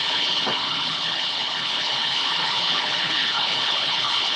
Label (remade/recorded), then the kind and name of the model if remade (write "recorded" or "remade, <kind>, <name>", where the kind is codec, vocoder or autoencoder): remade, codec, HILCodec